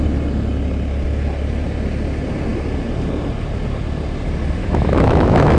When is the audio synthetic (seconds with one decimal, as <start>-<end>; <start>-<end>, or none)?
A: 4.6-5.6

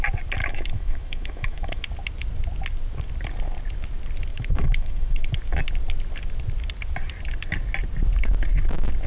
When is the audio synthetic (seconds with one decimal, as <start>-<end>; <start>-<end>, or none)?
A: 0.4-1.8; 4.3-5.3